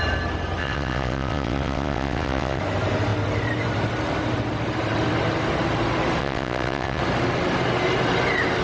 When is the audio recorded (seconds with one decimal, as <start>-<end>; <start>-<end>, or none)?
0.0-0.6; 2.6-6.2; 7.0-8.6